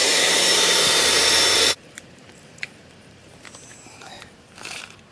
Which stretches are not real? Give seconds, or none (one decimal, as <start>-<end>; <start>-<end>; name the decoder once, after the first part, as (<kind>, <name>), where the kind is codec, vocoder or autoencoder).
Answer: 0.0-5.1 (vocoder, BigVGAN v2)